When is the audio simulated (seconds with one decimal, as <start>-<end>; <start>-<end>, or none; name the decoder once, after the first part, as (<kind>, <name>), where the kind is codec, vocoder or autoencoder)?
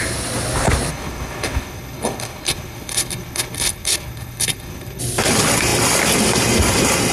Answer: 0.9-5.0 (codec, HILCodec)